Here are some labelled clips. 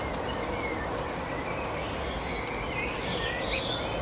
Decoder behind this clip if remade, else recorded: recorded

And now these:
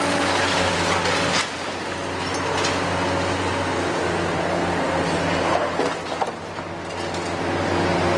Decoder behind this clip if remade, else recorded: recorded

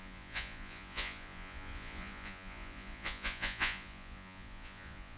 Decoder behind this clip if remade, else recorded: remade, vocoder, Vocos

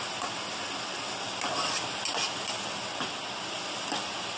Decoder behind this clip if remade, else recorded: recorded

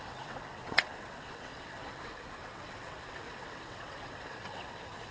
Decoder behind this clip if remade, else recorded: remade, vocoder, WaveNeXt